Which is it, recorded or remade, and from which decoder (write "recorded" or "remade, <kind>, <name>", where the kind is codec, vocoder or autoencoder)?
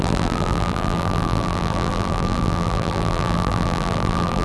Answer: remade, vocoder, BigVGAN v2